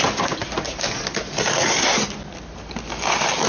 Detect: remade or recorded recorded